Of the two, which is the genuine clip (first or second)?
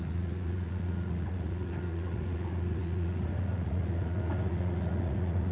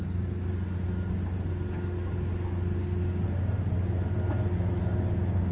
second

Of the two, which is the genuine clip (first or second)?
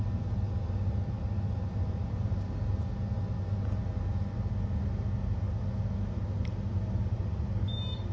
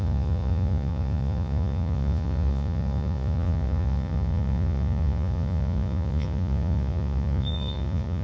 first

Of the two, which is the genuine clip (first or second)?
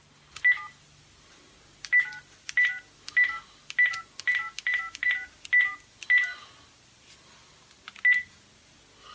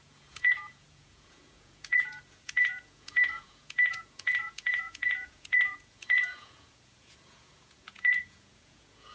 first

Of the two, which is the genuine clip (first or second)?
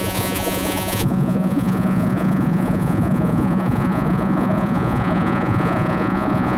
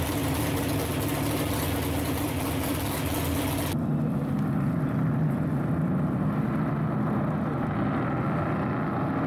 second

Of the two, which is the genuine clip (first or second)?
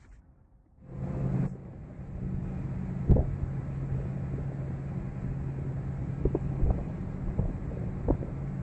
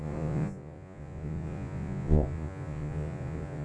first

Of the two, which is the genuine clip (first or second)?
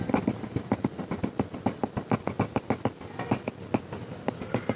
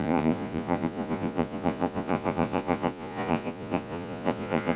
first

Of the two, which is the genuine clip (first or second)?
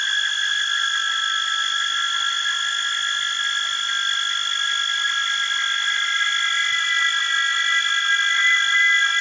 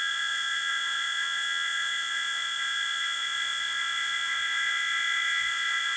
first